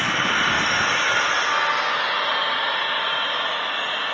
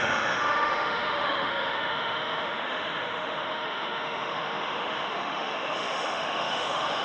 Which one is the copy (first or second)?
second